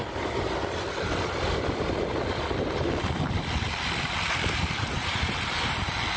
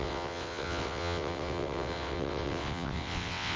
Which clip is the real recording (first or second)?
first